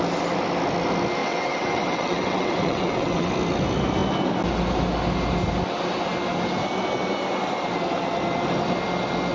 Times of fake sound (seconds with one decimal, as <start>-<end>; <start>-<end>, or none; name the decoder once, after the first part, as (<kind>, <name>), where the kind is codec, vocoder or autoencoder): 1.2-3.3 (vocoder, WaveNeXt)